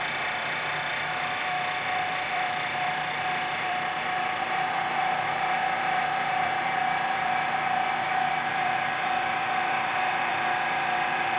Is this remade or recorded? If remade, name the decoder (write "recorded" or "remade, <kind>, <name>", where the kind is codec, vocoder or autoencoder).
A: remade, vocoder, BigVGAN v2